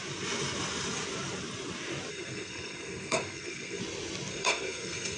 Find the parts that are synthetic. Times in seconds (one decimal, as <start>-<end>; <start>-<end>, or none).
2.1-3.8; 4.3-5.2